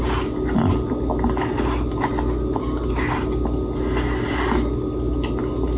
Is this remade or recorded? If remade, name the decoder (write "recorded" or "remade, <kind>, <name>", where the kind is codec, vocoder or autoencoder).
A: recorded